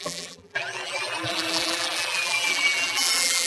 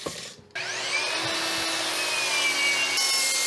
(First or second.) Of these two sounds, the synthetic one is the first